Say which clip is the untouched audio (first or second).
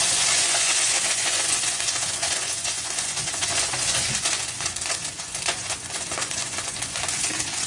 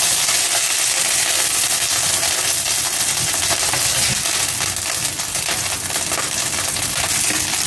second